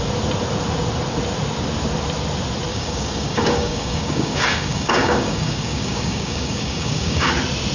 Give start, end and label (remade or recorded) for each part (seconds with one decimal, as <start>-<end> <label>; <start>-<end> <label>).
0.0-2.7 recorded; 2.7-7.3 remade; 7.3-7.7 recorded

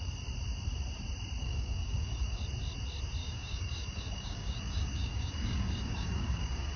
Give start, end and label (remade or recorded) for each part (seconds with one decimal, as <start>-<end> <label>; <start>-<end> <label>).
0.0-1.4 recorded; 1.4-2.4 remade; 2.4-3.2 recorded; 3.2-6.8 remade

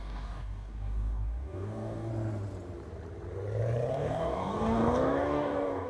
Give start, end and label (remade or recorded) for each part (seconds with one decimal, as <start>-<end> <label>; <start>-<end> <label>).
0.0-2.1 remade; 2.1-3.9 recorded; 3.9-5.9 remade

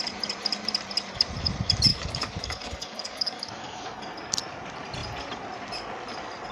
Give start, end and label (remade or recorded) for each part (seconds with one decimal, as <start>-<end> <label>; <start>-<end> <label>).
0.0-1.9 recorded; 1.9-4.0 remade; 4.0-6.5 recorded

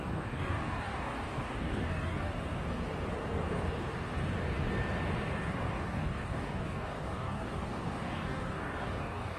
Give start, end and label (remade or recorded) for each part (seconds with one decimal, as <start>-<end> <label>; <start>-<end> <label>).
0.0-2.3 remade; 2.3-5.5 recorded; 5.5-9.4 remade

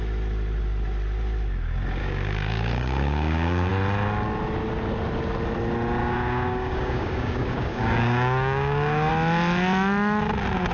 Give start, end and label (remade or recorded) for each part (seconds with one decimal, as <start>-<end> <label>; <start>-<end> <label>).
0.0-2.0 recorded; 2.0-3.7 remade; 3.7-6.0 recorded; 6.0-9.1 remade; 9.1-10.7 recorded

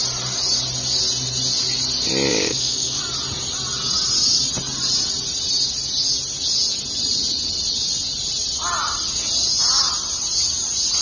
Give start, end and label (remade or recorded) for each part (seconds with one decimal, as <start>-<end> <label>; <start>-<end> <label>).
0.0-2.3 recorded; 2.3-3.0 remade; 3.0-11.0 recorded

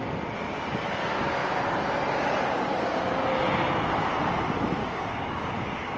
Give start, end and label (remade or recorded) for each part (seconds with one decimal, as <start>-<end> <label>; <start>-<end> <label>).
0.0-4.8 recorded; 4.8-6.0 remade